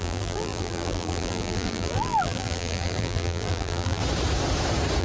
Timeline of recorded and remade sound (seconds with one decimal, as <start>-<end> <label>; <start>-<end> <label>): 0.0-4.0 remade; 4.0-5.0 recorded